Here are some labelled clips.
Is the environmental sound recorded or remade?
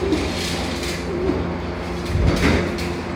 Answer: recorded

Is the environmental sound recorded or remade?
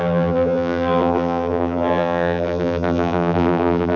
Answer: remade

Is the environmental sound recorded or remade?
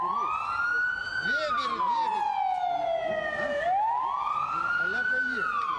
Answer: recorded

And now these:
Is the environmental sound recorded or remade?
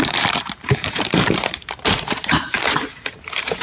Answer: remade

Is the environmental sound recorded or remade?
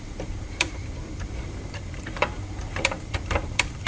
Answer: remade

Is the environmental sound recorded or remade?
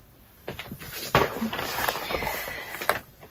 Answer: recorded